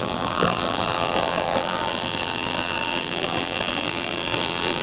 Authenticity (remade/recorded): remade